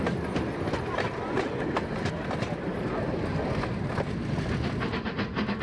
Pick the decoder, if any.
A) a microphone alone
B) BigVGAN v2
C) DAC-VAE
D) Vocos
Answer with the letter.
A